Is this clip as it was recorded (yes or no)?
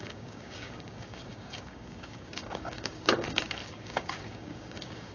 no